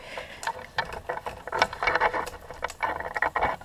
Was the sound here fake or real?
real